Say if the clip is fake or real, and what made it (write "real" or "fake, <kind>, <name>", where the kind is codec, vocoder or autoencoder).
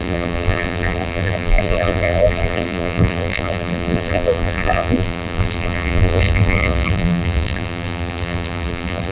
fake, vocoder, BigVGAN v2